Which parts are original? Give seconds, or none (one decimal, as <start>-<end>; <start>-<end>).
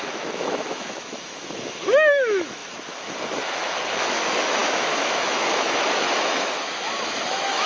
none